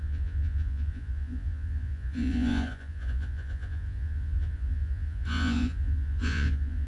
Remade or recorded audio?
remade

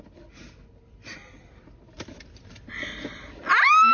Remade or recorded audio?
recorded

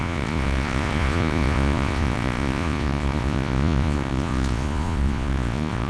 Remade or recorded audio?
remade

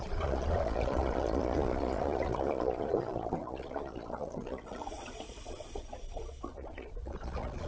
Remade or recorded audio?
remade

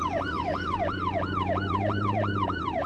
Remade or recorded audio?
remade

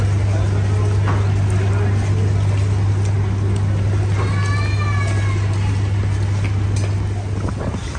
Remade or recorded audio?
recorded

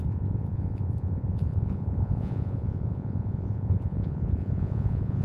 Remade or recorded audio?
remade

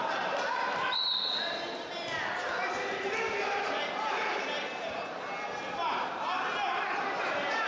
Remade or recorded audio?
recorded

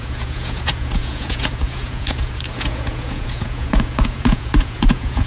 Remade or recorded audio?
remade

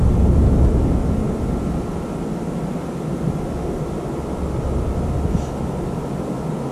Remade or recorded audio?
recorded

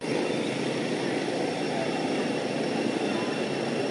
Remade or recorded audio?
recorded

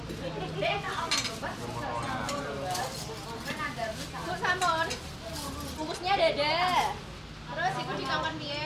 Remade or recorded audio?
recorded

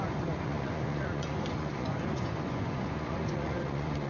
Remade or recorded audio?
remade